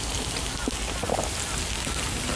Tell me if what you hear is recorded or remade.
recorded